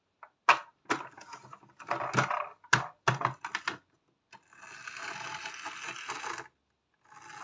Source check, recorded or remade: recorded